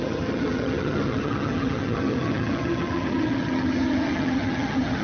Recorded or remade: remade